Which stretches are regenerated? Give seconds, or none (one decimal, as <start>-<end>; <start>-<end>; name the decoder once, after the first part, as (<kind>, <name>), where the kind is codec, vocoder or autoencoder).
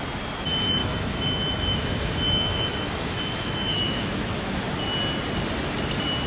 0.8-4.6 (autoencoder, DAC-VAE)